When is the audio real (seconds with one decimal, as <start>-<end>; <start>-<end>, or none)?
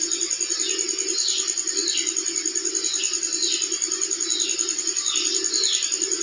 0.0-6.2